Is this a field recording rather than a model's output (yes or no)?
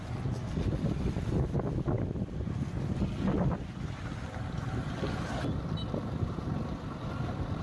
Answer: yes